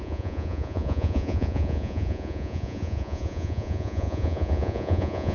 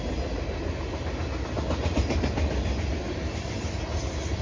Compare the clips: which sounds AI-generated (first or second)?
first